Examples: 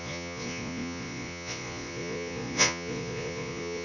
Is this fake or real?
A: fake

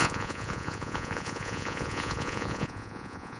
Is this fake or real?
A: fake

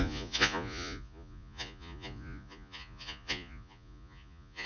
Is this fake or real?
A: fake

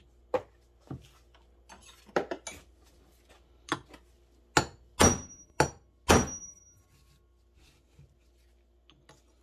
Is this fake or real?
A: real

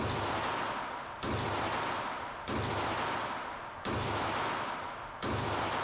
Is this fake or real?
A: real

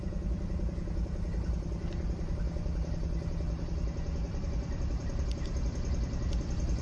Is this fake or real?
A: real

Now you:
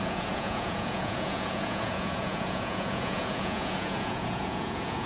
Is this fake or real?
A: fake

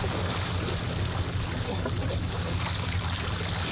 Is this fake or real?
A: real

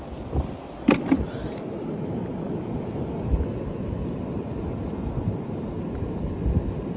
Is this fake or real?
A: real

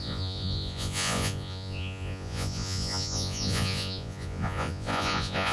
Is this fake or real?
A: fake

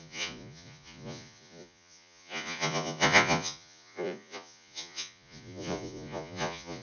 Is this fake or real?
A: fake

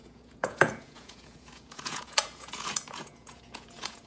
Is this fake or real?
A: fake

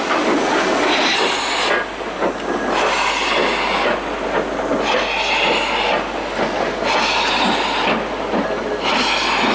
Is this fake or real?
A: real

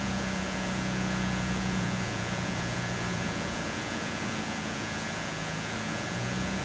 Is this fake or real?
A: fake